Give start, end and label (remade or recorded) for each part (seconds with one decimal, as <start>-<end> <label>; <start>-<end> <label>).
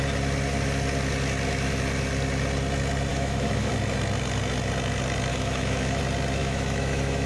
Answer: 0.0-3.1 recorded; 3.1-3.7 remade; 3.7-5.3 recorded; 5.3-6.0 remade; 6.0-6.4 recorded; 6.4-7.3 remade